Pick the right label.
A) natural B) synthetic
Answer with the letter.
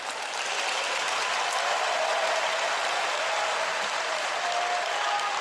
A